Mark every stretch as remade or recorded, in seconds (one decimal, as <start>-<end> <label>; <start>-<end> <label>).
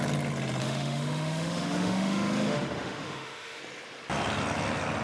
0.0-0.6 recorded; 0.6-3.6 remade; 3.6-5.0 recorded